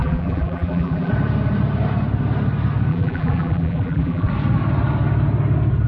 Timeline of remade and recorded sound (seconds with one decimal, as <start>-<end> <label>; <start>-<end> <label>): 0.0-1.1 remade; 1.1-2.9 recorded; 2.9-4.3 remade; 4.3-5.9 recorded